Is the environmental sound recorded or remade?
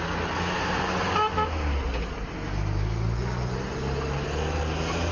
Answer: recorded